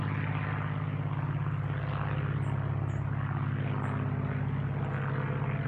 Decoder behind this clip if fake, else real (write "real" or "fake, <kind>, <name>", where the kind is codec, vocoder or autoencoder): real